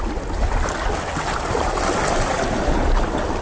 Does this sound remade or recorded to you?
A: recorded